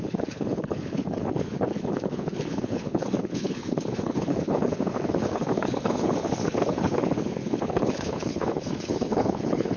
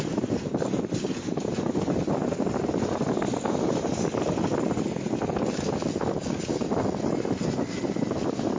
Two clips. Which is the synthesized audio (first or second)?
first